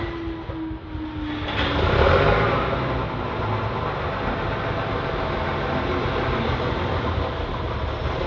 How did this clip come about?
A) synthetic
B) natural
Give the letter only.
B